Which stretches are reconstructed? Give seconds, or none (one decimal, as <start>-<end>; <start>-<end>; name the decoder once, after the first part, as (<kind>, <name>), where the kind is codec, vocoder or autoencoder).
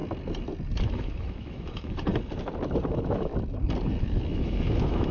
0.8-2.1 (autoencoder, DAC-VAE); 2.9-3.3; 4.0-5.1